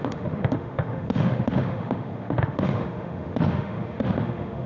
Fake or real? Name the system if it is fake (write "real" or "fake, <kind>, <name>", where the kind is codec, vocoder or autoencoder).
fake, autoencoder, DAC-VAE